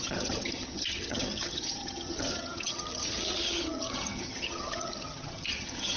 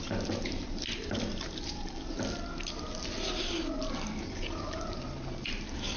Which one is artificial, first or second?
first